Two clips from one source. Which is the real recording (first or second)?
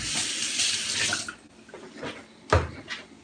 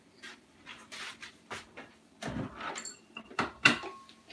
first